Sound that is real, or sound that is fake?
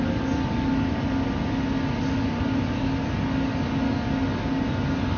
real